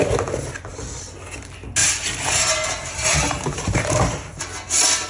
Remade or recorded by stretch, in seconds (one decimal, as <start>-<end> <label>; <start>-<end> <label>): 0.0-1.8 recorded; 1.8-4.4 remade; 4.4-5.1 recorded